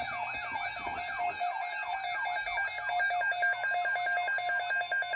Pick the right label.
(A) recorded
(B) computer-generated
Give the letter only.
A